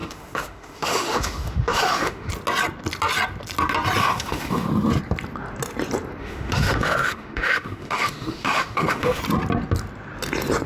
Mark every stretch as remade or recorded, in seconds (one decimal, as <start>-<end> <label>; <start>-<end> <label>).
0.0-2.3 remade; 2.3-4.0 recorded; 4.0-4.7 remade; 4.7-6.2 recorded; 6.2-9.2 remade; 9.2-10.7 recorded